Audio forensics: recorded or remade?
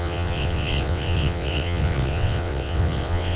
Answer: remade